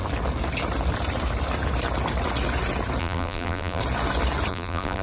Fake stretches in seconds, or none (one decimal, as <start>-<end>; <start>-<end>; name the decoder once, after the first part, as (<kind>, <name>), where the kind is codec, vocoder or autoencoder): 3.0-3.8 (vocoder, BigVGAN v2); 4.5-5.0